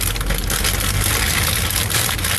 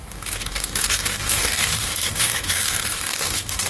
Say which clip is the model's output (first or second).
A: second